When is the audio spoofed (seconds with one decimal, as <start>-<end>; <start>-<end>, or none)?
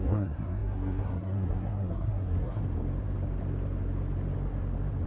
0.0-2.6